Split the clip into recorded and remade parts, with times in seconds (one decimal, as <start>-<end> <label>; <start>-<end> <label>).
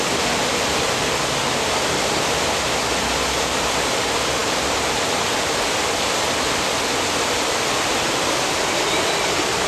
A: 0.0-9.7 recorded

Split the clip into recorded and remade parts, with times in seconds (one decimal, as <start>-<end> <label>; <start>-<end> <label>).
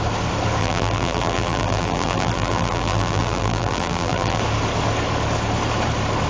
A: 0.0-0.6 recorded; 0.6-4.4 remade; 4.4-6.3 recorded